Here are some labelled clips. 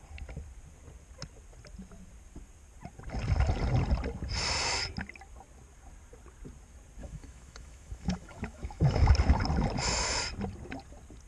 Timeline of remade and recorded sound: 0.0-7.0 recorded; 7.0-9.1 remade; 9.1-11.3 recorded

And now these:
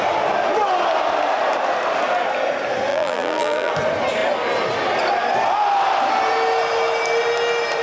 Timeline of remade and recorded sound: 0.0-2.9 recorded; 2.9-3.7 remade; 3.7-7.8 recorded

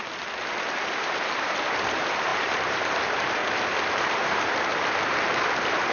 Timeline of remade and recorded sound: 0.0-0.8 recorded; 0.8-3.4 remade; 3.4-3.9 recorded; 3.9-5.9 remade

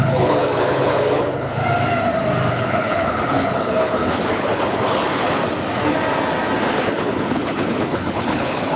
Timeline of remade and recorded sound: 0.0-1.6 remade; 1.6-2.5 recorded; 2.5-5.4 remade; 5.4-6.7 recorded; 6.7-8.8 remade

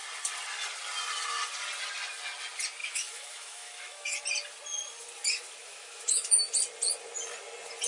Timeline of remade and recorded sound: 0.0-2.8 recorded; 2.8-4.2 remade; 4.2-5.6 recorded; 5.6-6.5 remade; 6.5-7.9 recorded

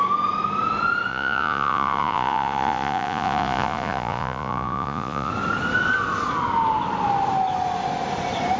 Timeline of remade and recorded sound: 0.0-1.1 recorded; 1.1-5.3 remade; 5.3-8.6 recorded

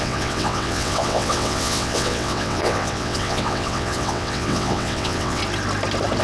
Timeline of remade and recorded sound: 0.0-5.4 remade; 5.4-6.2 recorded